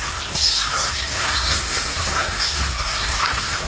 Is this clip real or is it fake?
fake